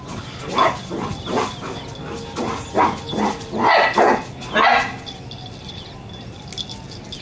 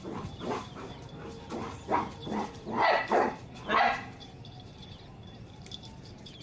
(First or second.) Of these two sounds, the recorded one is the first